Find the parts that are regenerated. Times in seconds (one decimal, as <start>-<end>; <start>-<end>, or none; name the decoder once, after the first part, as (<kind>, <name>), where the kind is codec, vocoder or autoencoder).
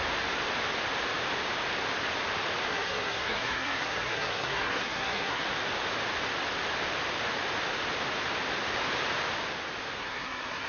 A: 2.7-5.5 (codec, SNAC); 10.0-10.7